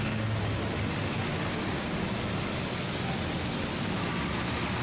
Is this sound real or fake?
real